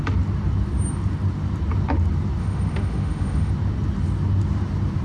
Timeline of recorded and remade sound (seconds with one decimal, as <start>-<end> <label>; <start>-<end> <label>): 0.0-2.4 recorded; 2.4-3.5 remade; 3.5-5.0 recorded